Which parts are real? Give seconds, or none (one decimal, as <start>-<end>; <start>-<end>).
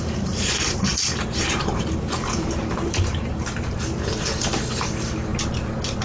5.3-6.0